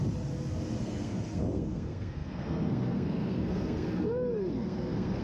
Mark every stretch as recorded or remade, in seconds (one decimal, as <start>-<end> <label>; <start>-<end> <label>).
0.0-0.8 recorded; 0.8-5.2 remade